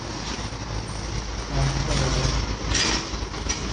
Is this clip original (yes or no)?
yes